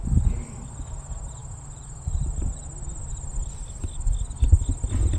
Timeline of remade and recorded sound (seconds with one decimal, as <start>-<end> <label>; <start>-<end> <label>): 0.0-1.4 recorded; 1.4-3.6 remade; 3.6-5.2 recorded